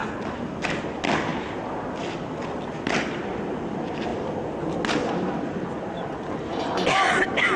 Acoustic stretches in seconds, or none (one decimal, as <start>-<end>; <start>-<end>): 0.0-7.6